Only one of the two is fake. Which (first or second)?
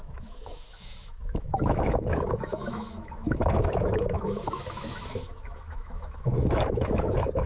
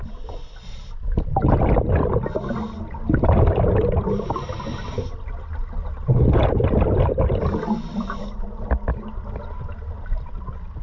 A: first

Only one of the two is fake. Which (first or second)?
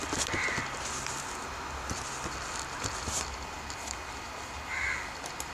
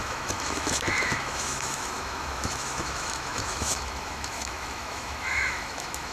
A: second